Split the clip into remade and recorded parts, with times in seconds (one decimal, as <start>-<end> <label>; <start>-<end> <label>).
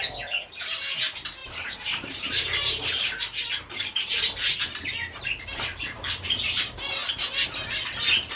0.0-1.4 recorded; 1.4-4.2 remade; 4.2-5.7 recorded; 5.7-6.9 remade; 6.9-8.4 recorded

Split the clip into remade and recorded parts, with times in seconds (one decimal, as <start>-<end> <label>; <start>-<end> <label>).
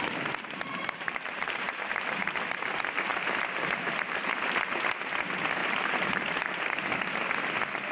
0.0-0.7 recorded; 0.7-2.7 remade; 2.7-3.1 recorded; 3.1-3.9 remade; 3.9-5.6 recorded; 5.6-6.6 remade; 6.6-7.9 recorded